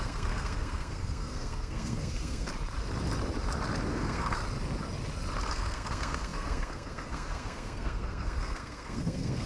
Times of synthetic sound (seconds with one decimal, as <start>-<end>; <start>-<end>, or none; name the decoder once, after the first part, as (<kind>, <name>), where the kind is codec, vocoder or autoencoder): 0.0-2.5 (codec, SNAC); 3.9-4.4; 5.5-9.5